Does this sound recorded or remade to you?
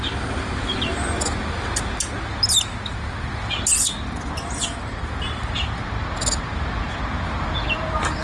recorded